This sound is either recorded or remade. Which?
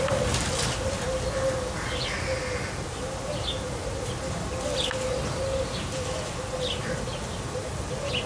recorded